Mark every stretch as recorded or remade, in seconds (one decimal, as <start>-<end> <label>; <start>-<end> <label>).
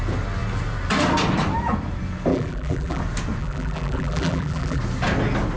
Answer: 0.0-2.3 recorded; 2.3-3.0 remade; 3.0-3.4 recorded; 3.4-4.8 remade; 4.8-5.6 recorded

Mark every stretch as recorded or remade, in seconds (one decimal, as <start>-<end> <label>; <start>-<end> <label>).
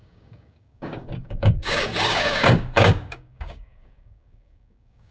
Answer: 0.0-5.1 remade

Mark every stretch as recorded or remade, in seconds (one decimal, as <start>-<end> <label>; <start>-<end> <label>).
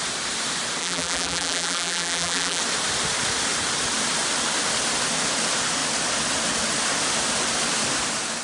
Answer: 0.0-0.8 recorded; 0.8-2.6 remade; 2.6-8.4 recorded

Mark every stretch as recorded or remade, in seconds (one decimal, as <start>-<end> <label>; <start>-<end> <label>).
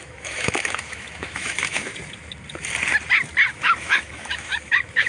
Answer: 0.0-1.9 remade; 1.9-3.5 recorded; 3.5-5.1 remade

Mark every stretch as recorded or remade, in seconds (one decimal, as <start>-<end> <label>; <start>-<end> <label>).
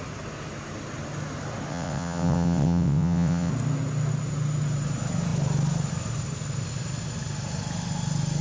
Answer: 0.0-1.7 recorded; 1.7-3.5 remade; 3.5-8.4 recorded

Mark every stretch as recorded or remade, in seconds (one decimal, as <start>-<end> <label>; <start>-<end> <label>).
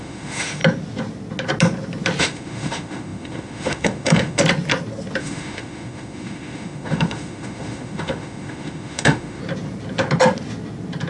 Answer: 0.0-0.6 remade; 0.6-2.2 recorded; 2.2-4.4 remade; 4.4-5.2 recorded; 5.2-9.4 remade; 9.4-11.1 recorded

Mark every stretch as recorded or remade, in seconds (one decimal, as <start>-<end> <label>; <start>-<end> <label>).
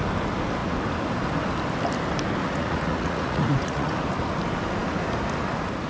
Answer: 0.0-2.4 recorded; 2.4-3.9 remade; 3.9-5.9 recorded